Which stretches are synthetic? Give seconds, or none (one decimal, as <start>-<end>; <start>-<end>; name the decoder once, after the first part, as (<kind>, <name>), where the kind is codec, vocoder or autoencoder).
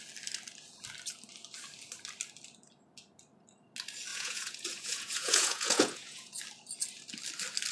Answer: 4.1-6.4 (vocoder, Vocos)